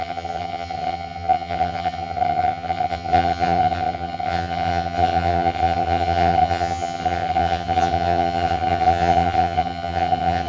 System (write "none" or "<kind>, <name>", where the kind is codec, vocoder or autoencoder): vocoder, HiFi-GAN